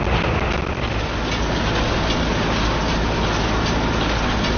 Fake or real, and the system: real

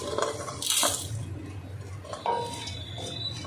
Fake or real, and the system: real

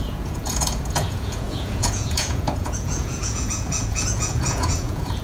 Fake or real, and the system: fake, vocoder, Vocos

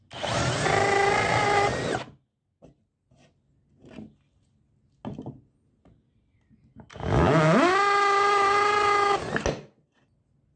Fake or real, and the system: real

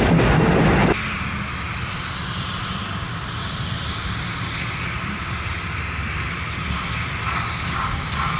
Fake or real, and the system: real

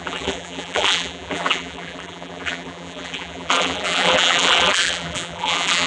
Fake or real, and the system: fake, vocoder, BigVGAN v2